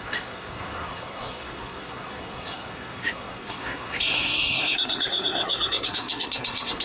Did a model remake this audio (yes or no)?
yes